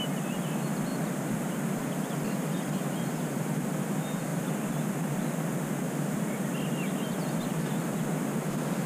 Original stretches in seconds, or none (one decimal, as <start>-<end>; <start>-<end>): 0.0-8.9